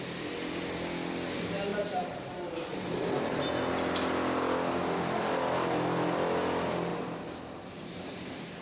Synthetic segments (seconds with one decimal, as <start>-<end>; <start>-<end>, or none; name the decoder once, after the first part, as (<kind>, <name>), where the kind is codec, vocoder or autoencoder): 1.7-3.5 (vocoder, BigVGAN v2); 6.9-8.6